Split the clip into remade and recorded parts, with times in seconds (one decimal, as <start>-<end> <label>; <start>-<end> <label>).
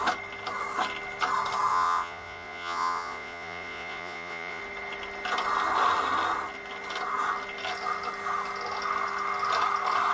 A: 0.0-1.7 recorded; 1.7-4.6 remade; 4.6-10.1 recorded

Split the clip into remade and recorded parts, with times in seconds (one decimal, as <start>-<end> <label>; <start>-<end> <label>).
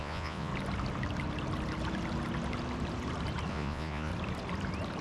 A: 0.0-0.5 remade; 0.5-3.5 recorded; 3.5-4.1 remade; 4.1-5.0 recorded